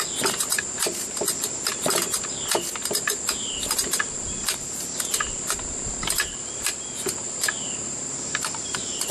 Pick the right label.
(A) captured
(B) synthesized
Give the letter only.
A